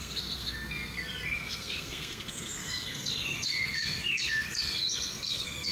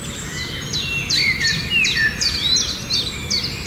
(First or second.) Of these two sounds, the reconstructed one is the first